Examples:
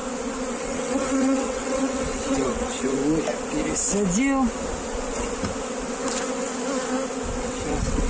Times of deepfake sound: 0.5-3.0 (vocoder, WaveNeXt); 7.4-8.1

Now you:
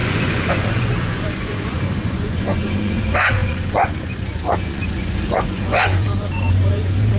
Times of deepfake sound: 0.0-7.2 (vocoder, Vocos)

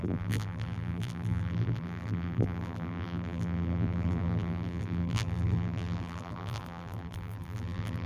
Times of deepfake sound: 0.0-8.1 (vocoder, BigVGAN v2)

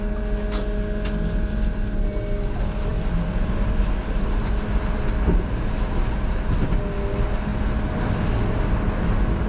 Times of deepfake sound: 2.9-4.3 (vocoder, BigVGAN v2)

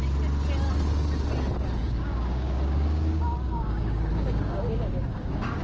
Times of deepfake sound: 1.8-5.6 (codec, DAC)